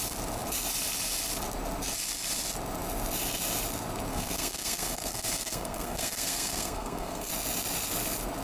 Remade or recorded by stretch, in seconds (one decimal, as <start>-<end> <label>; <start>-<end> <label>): 0.0-4.1 recorded; 4.1-7.3 remade; 7.3-8.4 recorded